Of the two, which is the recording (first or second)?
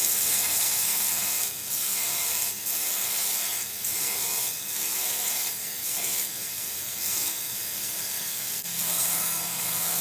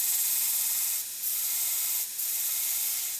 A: second